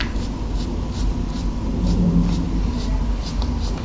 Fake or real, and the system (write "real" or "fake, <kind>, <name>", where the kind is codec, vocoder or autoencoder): real